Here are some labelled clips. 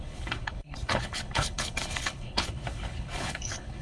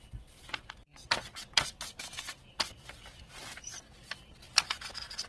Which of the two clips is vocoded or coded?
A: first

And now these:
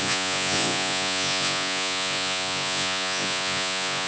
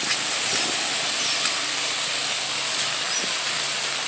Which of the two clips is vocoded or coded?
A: first